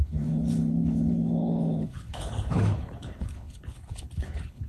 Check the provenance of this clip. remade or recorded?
remade